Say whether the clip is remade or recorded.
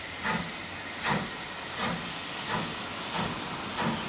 recorded